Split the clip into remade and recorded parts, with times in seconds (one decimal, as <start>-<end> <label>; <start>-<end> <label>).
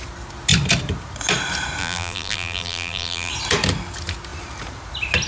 0.0-1.8 recorded; 1.8-3.3 remade; 3.3-5.3 recorded